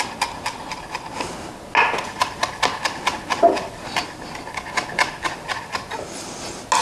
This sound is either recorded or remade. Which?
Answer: recorded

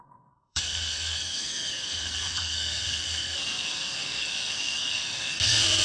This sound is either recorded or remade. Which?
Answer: remade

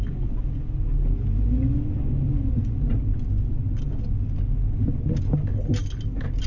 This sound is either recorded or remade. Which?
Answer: recorded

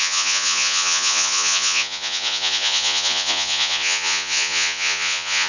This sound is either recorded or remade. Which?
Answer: remade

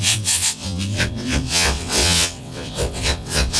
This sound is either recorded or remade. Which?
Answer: remade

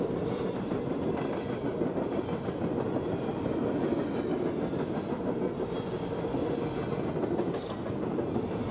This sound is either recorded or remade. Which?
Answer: recorded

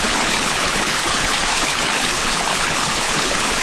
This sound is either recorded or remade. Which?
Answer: remade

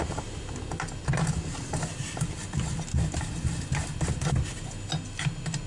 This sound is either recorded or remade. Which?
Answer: recorded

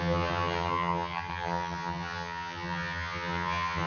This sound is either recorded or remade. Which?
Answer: remade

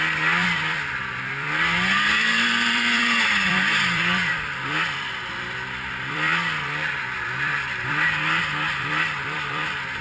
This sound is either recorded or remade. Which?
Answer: remade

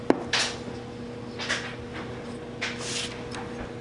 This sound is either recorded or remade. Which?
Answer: recorded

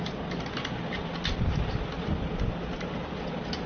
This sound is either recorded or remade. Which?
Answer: recorded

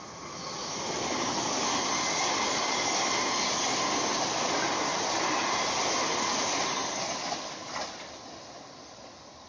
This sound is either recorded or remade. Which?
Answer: recorded